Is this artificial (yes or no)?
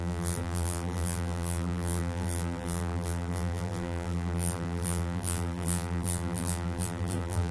yes